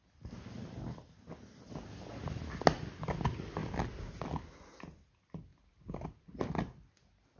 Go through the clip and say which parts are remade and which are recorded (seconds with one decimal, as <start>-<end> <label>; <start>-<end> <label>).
0.0-7.4 recorded